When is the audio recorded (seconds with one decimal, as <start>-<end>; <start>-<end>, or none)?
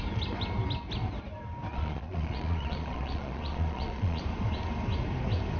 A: 0.0-1.7; 4.2-5.6